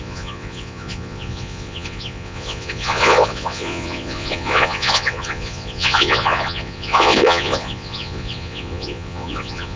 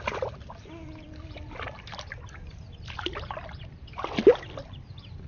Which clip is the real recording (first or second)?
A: second